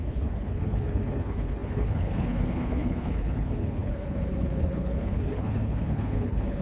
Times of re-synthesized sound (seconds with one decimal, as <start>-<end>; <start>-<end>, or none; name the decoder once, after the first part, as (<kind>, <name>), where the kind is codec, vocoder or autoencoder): 0.0-6.6 (codec, HILCodec)

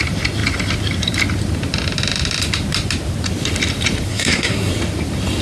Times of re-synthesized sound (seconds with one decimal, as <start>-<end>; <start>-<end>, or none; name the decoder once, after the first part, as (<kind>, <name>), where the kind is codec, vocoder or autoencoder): 4.1-4.7 (codec, SNAC)